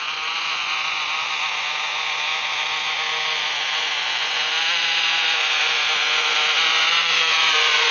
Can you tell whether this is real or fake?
fake